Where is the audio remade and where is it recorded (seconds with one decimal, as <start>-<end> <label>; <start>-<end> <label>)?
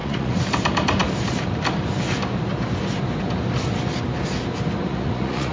0.0-0.5 remade; 0.5-4.8 recorded; 4.8-5.5 remade